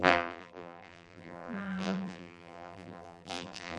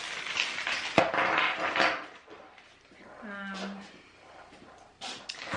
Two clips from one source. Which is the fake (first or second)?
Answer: first